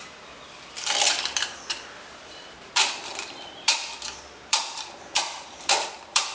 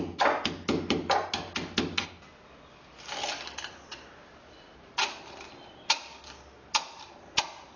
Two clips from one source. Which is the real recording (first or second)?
second